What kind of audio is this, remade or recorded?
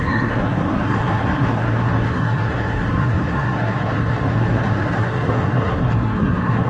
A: remade